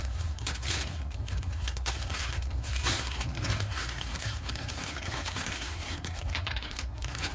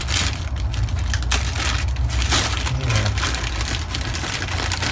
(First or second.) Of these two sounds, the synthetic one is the first